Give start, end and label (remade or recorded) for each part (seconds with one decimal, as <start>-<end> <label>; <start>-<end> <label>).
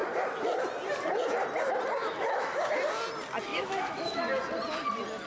0.0-2.0 recorded; 2.0-2.7 remade; 2.7-3.5 recorded; 3.5-4.2 remade; 4.2-5.3 recorded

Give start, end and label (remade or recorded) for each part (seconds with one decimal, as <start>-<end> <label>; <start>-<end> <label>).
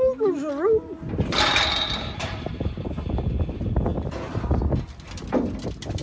0.0-6.0 recorded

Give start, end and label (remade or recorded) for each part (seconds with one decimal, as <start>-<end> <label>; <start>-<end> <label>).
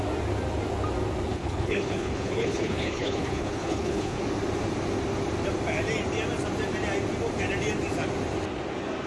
0.0-1.3 recorded; 1.3-4.2 remade; 4.2-9.1 recorded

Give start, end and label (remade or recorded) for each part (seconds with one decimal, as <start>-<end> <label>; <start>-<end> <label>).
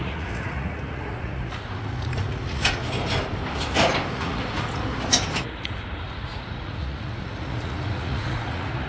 0.0-2.8 remade; 2.8-4.1 recorded; 4.1-4.8 remade; 4.8-5.4 recorded; 5.4-8.9 remade